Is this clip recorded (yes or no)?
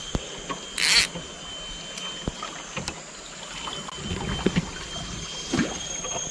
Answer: yes